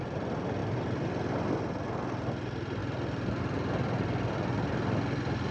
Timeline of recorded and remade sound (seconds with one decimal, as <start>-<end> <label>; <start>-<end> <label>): 0.0-5.5 recorded